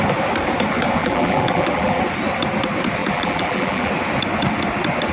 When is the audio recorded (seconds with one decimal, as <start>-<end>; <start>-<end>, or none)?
0.0-1.0; 2.0-3.0; 3.9-5.1